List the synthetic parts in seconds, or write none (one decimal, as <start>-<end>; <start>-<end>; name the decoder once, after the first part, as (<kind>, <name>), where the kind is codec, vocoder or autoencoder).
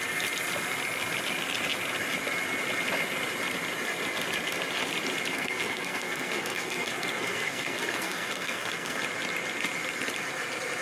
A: 5.3-9.0 (codec, SNAC)